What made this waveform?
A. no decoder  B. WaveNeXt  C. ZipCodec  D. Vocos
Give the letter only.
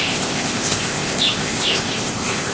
C